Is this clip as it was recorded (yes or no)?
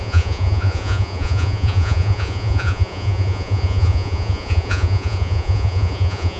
no